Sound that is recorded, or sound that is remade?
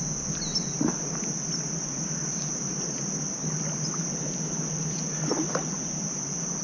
recorded